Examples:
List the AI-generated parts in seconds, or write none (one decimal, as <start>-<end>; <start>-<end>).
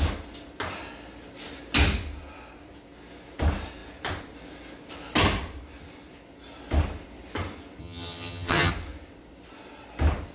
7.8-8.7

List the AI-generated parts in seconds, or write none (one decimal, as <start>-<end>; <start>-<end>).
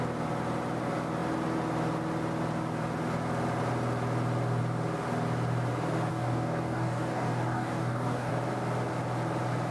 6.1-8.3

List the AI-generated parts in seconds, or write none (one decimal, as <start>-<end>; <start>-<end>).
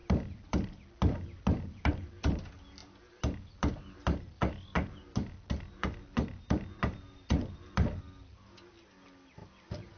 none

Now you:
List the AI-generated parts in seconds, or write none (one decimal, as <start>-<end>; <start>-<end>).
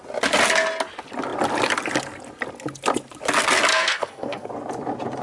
3.7-4.5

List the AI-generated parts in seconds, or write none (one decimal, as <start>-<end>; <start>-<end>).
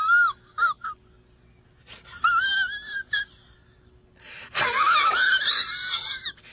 none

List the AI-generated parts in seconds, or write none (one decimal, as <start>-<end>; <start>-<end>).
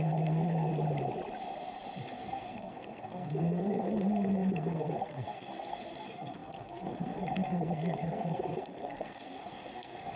0.0-0.7; 2.1-10.2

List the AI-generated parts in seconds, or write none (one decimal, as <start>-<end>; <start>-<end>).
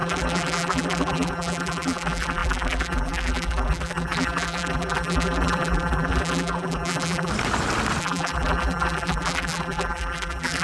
0.0-7.3; 8.0-10.6